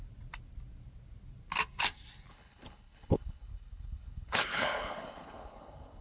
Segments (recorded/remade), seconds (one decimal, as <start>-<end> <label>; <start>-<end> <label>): 0.0-2.3 recorded; 2.3-6.0 remade